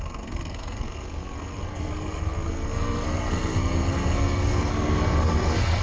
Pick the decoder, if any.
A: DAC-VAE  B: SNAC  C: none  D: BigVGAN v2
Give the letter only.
B